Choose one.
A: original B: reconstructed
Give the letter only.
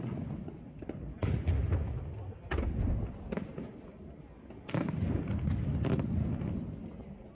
A